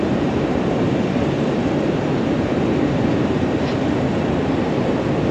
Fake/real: fake